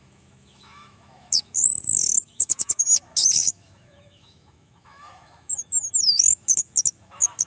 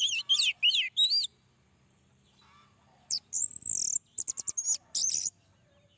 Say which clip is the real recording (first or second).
second